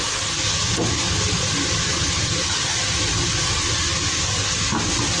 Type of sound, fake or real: real